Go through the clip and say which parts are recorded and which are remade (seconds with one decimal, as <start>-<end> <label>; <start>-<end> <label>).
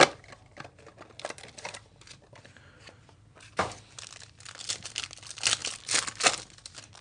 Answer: 0.0-7.0 recorded